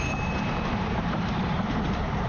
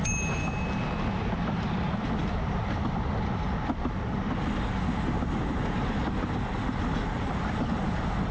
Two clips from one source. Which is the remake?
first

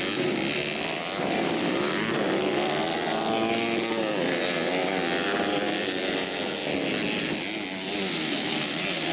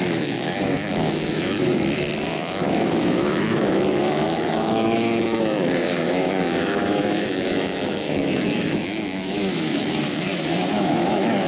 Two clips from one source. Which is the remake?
second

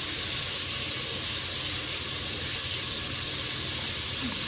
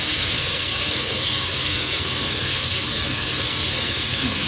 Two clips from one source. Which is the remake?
second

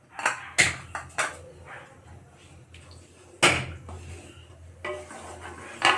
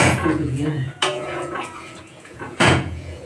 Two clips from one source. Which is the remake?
second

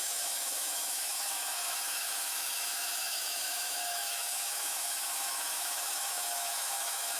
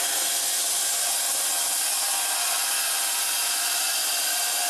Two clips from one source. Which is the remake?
first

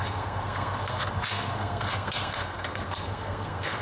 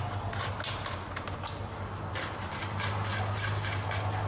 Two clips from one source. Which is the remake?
first